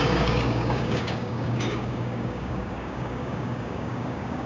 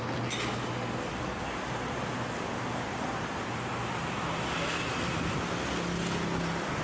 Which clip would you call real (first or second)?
second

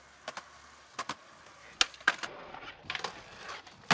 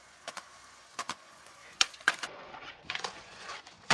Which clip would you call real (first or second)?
first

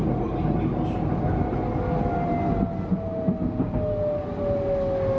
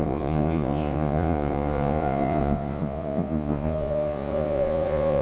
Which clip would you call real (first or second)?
first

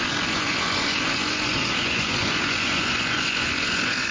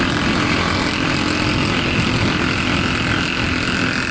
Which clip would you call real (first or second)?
second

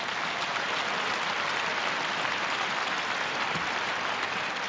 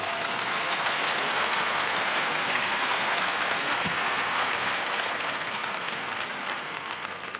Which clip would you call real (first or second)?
first